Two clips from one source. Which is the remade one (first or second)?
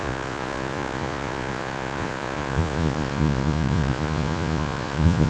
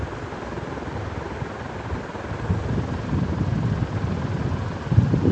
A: first